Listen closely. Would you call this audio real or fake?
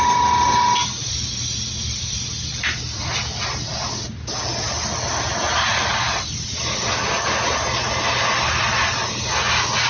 real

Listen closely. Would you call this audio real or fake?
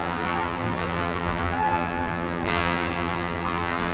fake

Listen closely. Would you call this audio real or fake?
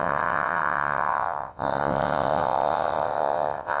fake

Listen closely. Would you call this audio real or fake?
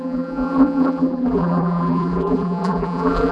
fake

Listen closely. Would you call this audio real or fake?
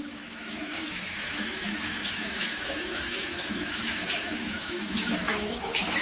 fake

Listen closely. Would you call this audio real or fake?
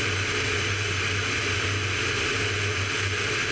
real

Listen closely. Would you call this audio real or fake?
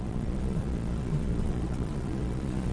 fake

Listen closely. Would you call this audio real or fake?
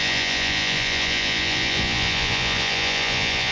fake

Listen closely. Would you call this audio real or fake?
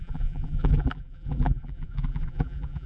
fake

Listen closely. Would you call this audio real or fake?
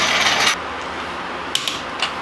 real